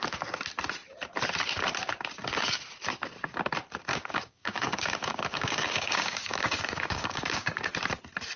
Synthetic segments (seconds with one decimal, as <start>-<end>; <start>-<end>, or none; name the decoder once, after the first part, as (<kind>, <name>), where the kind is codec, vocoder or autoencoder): 3.9-7.7 (codec, DAC)